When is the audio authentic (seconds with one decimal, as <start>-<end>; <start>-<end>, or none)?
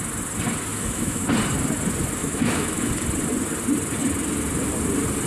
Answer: 0.0-0.7; 1.3-2.2; 2.9-5.3